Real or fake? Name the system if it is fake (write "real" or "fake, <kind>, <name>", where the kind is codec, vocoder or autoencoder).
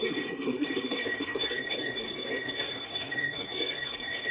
fake, codec, SNAC